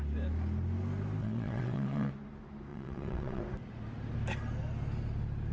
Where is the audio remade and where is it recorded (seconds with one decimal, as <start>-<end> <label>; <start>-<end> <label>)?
0.0-1.2 recorded; 1.2-2.1 remade; 2.1-2.7 recorded; 2.7-3.4 remade; 3.4-5.5 recorded